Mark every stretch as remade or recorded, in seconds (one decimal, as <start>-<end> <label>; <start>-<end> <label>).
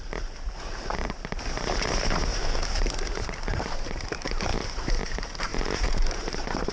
0.0-2.3 remade; 2.3-3.5 recorded; 3.5-4.5 remade; 4.5-5.0 recorded; 5.0-6.7 remade